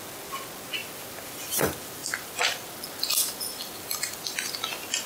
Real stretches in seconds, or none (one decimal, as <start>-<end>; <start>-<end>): 0.0-0.8; 1.4-2.0